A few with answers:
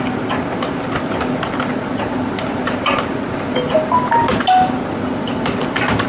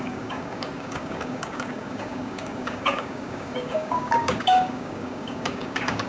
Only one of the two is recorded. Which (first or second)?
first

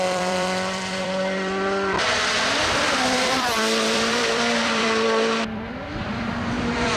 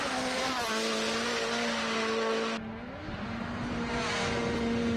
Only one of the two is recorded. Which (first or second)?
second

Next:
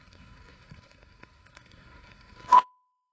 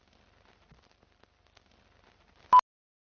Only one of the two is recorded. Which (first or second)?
second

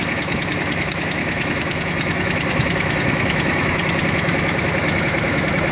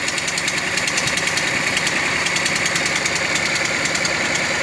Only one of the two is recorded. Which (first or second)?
second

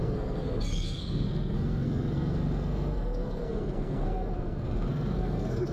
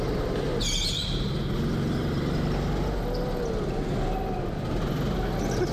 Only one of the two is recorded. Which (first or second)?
second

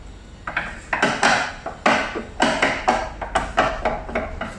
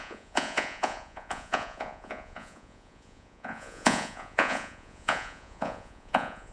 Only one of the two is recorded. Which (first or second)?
first